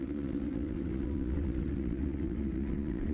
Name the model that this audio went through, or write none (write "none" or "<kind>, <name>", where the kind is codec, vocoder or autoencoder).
vocoder, WaveNeXt